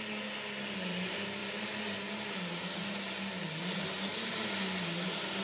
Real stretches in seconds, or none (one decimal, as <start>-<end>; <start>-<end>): 0.0-5.4